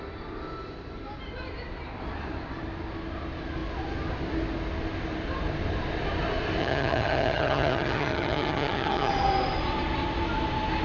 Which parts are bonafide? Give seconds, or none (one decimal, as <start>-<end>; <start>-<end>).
0.0-6.6; 9.1-10.8